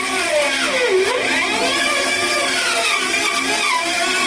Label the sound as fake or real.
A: real